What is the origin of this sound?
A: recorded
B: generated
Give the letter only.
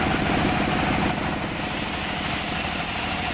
A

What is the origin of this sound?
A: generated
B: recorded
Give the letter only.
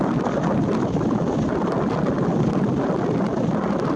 B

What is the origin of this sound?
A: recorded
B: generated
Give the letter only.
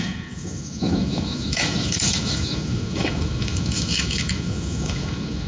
B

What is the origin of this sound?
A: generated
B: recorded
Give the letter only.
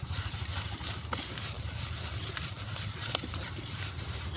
A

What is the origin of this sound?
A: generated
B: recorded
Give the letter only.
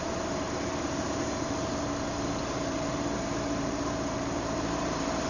A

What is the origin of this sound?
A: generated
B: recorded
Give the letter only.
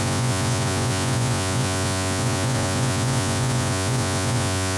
A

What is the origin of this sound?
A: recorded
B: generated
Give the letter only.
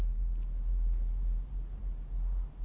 A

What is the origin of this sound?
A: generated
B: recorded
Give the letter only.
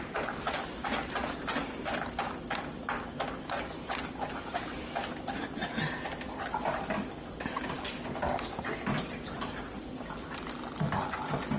B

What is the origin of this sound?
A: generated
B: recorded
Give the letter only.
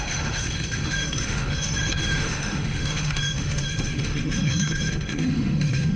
A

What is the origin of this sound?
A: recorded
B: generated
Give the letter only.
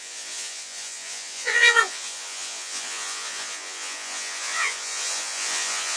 B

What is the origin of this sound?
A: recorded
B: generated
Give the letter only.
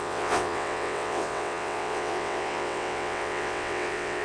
B